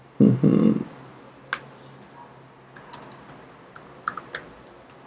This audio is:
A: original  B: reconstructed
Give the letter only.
A